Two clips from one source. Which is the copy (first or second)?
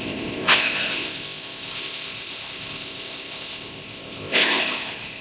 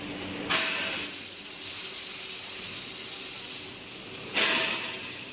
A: first